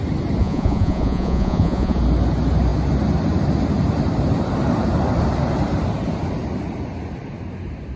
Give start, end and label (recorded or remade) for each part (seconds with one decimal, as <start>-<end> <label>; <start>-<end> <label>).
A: 0.0-0.4 recorded; 0.4-2.0 remade; 2.0-8.0 recorded